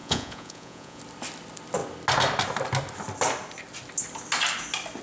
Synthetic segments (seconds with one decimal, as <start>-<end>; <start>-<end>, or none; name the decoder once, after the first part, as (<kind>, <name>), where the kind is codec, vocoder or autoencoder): 0.0-1.0 (vocoder, Vocos)